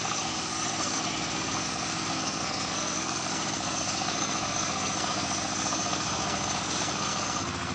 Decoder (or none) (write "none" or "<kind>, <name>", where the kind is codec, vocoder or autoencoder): codec, SNAC